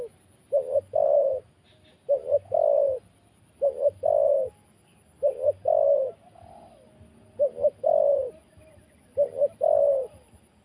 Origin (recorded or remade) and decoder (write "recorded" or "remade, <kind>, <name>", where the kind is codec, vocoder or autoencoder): recorded